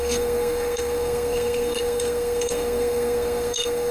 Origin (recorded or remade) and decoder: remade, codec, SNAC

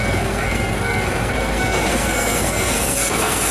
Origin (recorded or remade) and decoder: remade, codec, SNAC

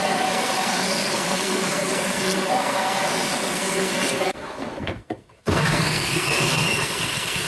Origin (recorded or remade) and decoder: remade, codec, SNAC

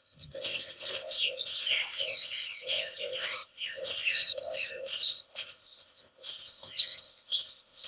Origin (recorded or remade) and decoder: remade, codec, ZipCodec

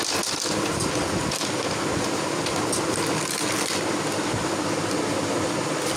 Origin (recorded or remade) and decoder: recorded